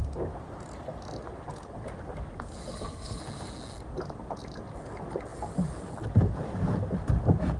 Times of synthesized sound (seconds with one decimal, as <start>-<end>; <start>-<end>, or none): 2.7-3.2